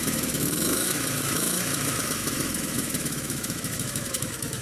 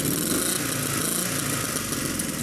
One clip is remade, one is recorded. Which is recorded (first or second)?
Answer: second